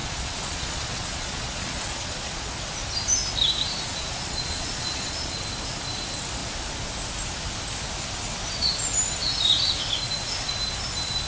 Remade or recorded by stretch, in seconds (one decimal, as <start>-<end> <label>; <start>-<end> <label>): 0.0-2.5 remade; 2.5-3.9 recorded; 3.9-5.4 remade; 5.4-11.3 recorded